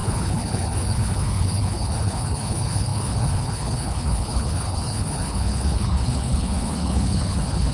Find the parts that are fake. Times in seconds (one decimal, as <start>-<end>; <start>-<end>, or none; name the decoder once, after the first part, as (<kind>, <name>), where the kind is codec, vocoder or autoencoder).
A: 0.0-7.7 (codec, HILCodec)